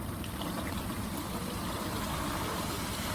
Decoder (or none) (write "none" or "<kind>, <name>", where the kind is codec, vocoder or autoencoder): vocoder, BigVGAN v2